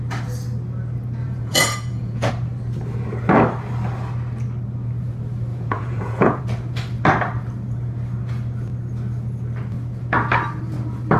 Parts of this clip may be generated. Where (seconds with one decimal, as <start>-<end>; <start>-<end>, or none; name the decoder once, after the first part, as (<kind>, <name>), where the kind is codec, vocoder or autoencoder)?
1.2-2.3 (vocoder, Vocos); 5.5-6.4

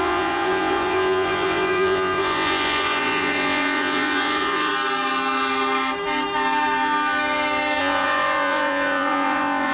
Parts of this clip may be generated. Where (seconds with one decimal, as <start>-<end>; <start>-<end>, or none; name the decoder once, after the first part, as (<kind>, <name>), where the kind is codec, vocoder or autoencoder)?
0.0-4.7 (vocoder, Vocos); 7.8-9.7